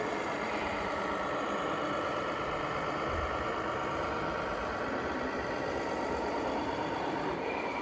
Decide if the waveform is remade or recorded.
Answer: remade